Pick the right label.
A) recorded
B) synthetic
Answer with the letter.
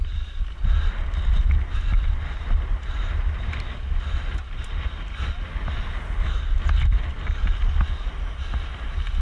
A